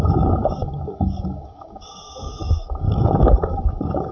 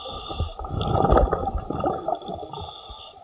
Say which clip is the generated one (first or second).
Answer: first